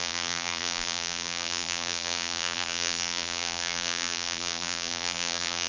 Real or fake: fake